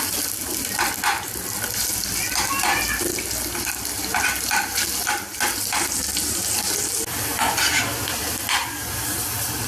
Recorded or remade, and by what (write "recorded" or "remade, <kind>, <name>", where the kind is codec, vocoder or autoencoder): recorded